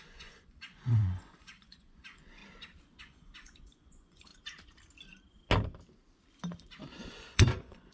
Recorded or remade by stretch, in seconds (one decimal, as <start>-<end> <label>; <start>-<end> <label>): 0.0-2.4 remade; 2.4-3.0 recorded; 3.0-4.3 remade; 4.3-7.1 recorded; 7.1-7.9 remade